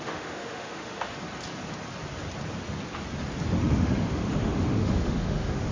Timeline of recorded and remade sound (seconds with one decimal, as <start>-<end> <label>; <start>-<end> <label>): 0.0-1.1 remade; 1.1-3.6 recorded; 3.6-5.7 remade